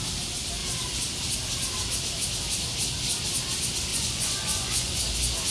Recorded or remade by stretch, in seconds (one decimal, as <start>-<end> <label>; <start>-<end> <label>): 0.0-3.9 recorded; 3.9-5.0 remade; 5.0-5.5 recorded